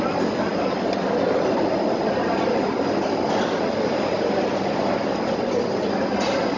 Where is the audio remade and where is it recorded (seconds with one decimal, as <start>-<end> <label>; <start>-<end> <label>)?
0.0-0.5 recorded; 0.5-4.2 remade; 4.2-6.6 recorded